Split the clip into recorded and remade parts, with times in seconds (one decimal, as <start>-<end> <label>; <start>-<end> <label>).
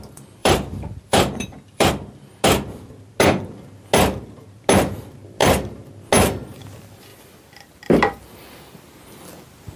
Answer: 0.0-0.4 recorded; 0.4-1.9 remade; 1.9-5.4 recorded; 5.4-6.1 remade; 6.1-9.8 recorded